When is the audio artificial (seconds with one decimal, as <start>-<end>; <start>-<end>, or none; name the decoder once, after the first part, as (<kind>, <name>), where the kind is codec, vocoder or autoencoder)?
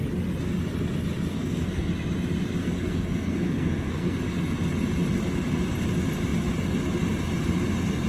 1.3-1.9 (codec, SNAC); 2.6-4.2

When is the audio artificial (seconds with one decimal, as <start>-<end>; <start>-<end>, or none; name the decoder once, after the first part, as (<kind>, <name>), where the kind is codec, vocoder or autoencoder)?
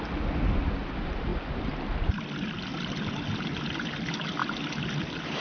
none